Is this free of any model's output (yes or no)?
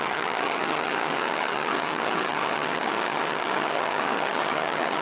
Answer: no